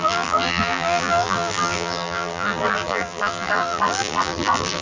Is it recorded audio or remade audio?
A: remade